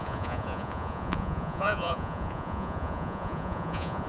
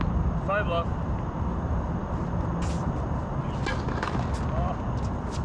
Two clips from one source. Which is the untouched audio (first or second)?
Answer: second